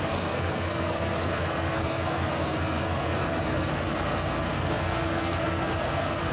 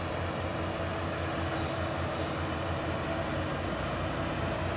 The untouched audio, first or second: second